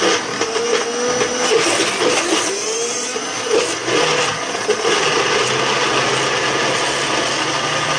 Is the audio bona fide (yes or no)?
yes